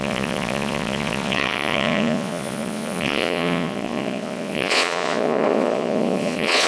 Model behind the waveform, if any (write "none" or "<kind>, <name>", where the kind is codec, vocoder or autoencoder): vocoder, Vocos